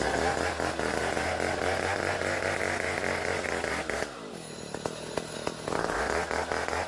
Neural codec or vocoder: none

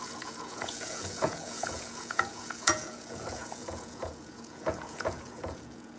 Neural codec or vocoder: vocoder, Vocos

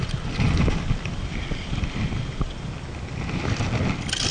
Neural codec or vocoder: none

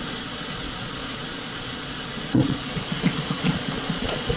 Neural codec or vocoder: vocoder, Vocos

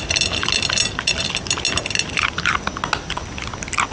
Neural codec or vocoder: none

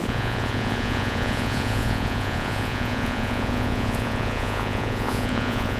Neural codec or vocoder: vocoder, Vocos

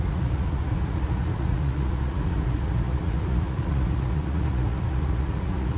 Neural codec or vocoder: vocoder, Vocos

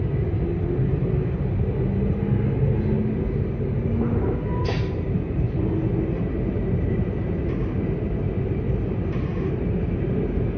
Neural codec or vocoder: none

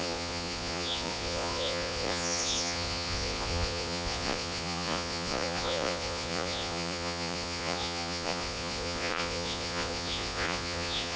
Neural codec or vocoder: vocoder, Vocos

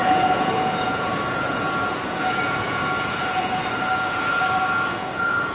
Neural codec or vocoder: vocoder, Vocos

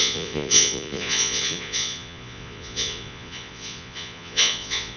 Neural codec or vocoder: vocoder, Vocos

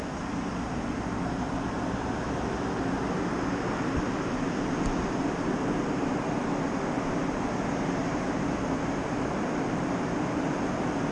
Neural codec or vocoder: none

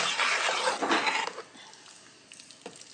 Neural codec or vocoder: none